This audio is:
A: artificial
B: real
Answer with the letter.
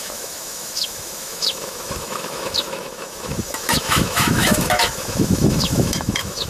A